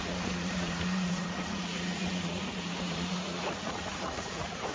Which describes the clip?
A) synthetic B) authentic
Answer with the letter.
A